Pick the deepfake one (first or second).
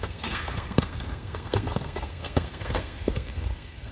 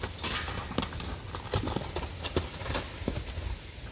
first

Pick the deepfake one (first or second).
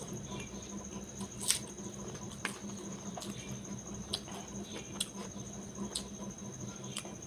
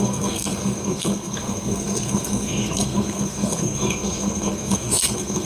second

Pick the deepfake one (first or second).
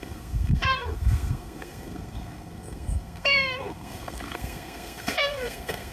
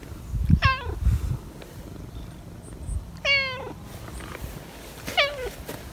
first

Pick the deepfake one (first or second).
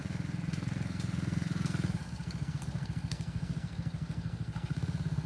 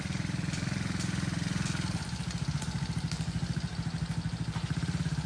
first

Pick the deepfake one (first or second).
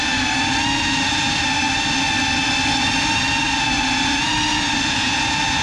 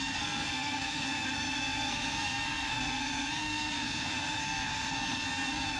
second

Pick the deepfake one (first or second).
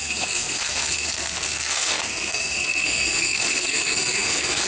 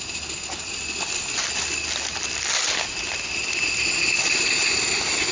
first